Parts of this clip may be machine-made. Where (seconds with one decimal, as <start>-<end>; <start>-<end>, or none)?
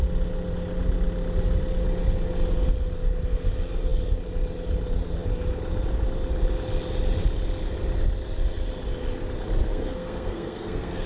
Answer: 9.6-11.1